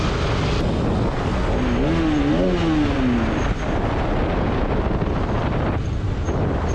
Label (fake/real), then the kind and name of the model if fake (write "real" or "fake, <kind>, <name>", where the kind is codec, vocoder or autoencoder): real